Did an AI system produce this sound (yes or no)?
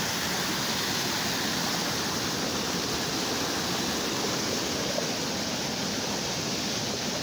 no